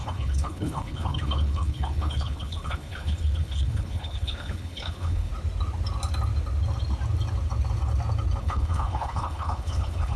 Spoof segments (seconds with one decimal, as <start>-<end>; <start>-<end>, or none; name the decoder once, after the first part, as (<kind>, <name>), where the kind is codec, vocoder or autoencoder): 0.0-5.3 (codec, HILCodec); 8.4-10.2